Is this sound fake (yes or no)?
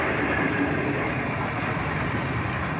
no